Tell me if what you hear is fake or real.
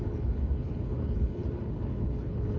fake